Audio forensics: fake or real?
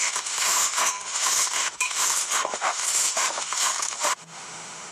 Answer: fake